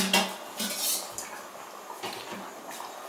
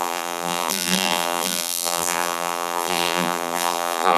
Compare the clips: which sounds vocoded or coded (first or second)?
second